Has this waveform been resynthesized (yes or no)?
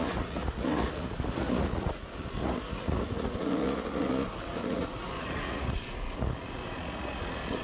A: yes